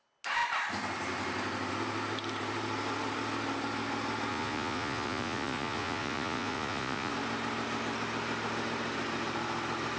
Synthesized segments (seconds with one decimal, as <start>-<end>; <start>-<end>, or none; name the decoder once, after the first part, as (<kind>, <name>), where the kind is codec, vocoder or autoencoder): 4.3-7.1 (vocoder, Vocos)